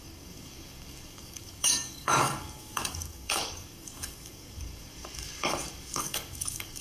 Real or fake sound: fake